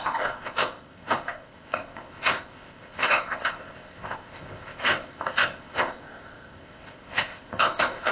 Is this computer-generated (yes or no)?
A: yes